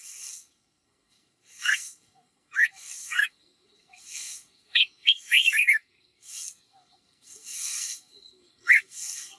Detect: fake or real fake